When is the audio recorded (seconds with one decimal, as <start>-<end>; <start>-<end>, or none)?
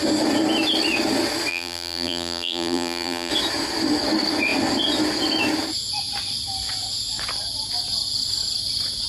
0.0-1.5; 3.3-9.1